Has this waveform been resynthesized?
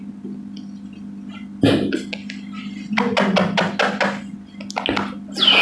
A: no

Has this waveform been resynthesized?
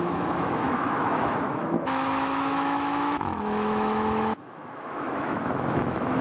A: yes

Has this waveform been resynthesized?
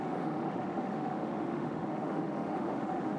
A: yes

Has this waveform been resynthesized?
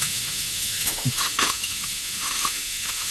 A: yes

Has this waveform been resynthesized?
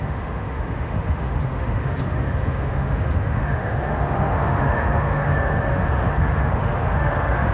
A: yes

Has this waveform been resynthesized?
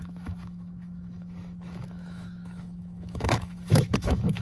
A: yes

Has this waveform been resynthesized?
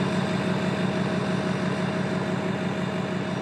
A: no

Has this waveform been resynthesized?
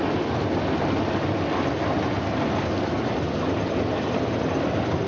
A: no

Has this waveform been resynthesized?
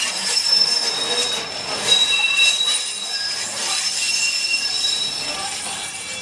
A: no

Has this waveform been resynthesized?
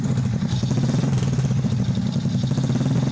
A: no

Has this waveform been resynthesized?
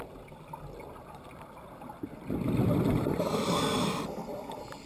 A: no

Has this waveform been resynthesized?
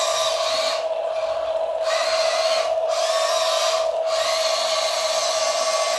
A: no